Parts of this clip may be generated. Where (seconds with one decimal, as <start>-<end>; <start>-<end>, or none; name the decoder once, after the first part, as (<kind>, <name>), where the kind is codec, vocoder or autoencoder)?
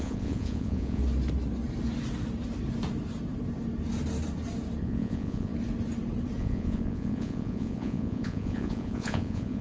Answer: 0.0-1.0 (vocoder, Vocos); 4.8-5.5; 6.4-9.6